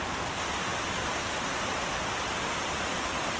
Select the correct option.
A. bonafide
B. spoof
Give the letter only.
A